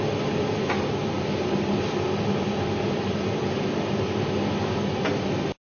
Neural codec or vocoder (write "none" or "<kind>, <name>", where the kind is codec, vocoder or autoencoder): none